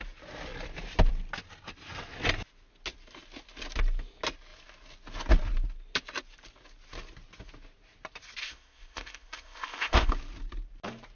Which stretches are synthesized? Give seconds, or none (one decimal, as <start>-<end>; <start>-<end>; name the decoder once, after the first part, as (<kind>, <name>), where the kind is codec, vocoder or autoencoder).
8.4-10.1 (codec, ZipCodec)